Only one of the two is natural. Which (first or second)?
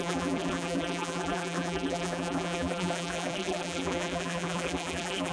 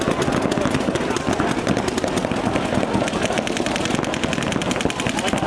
second